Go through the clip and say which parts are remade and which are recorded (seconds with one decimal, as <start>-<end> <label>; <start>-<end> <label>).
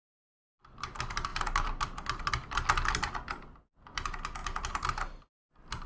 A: 0.0-5.9 recorded